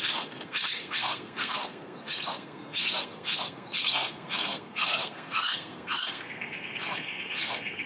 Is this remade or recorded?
remade